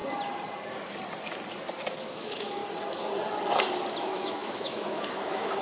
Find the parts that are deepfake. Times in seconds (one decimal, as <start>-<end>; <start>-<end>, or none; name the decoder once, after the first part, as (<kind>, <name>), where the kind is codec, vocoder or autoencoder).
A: 2.0-2.6 (autoencoder, DAC-VAE); 4.0-5.6